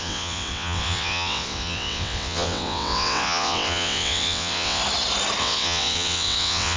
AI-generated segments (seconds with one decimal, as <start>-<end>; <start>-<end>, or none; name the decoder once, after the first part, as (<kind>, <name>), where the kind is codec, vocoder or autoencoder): 0.0-4.8 (vocoder, WaveNeXt); 5.4-6.8